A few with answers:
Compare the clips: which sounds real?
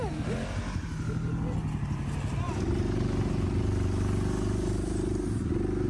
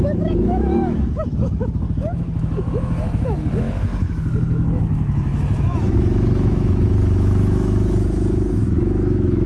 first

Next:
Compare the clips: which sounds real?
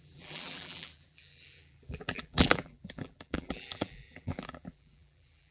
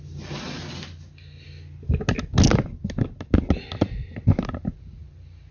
second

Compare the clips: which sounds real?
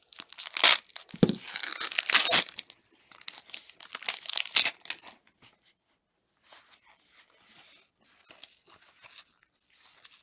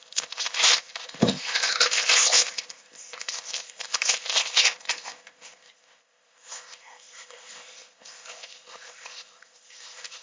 first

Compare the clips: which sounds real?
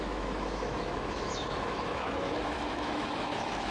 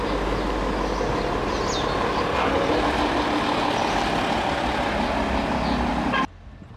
second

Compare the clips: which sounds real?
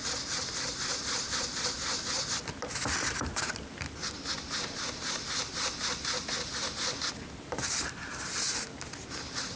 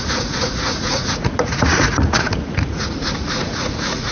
first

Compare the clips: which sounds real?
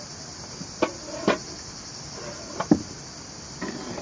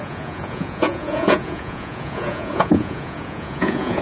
first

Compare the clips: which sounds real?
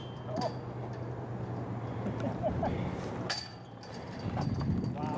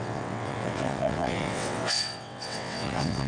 first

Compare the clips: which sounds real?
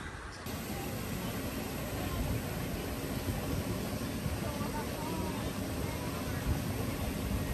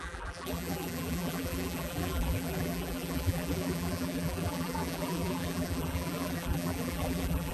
first